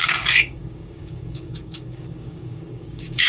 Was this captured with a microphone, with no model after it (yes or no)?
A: no